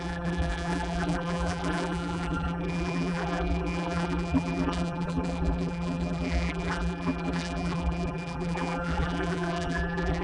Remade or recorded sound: remade